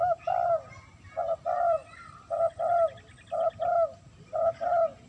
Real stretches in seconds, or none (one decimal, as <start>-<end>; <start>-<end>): 0.0-5.1